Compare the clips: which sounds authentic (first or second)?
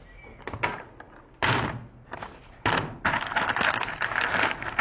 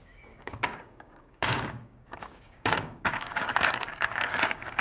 first